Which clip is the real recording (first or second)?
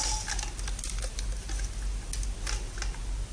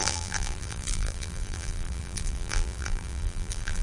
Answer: first